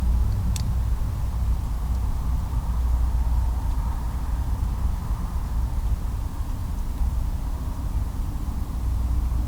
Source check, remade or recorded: recorded